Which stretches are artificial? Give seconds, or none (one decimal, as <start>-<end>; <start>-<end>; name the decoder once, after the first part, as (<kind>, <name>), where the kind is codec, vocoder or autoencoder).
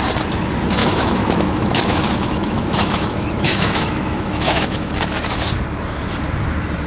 0.8-4.9 (autoencoder, DAC-VAE)